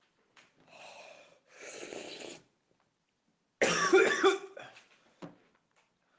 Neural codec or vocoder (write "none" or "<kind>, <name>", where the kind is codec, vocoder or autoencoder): none